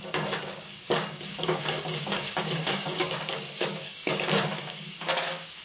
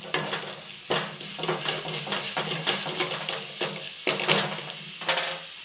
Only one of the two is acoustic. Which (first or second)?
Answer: second